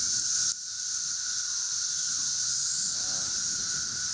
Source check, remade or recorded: recorded